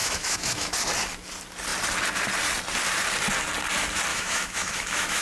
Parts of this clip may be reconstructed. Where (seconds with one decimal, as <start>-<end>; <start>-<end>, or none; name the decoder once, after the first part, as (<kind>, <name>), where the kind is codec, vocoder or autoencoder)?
0.0-0.7 (autoencoder, DAC-VAE); 4.1-5.2